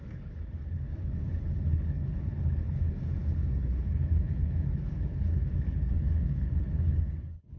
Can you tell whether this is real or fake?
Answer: fake